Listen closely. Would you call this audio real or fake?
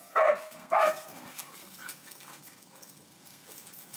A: fake